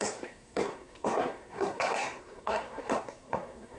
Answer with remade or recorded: remade